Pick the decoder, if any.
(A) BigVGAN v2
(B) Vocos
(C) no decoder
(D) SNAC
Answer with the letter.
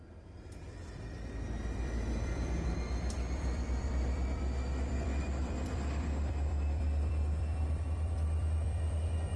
A